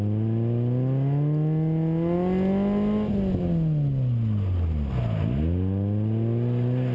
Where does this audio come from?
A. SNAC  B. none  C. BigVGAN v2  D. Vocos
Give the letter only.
B